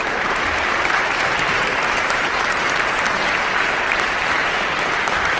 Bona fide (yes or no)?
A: no